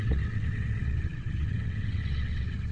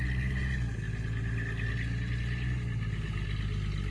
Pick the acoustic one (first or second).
second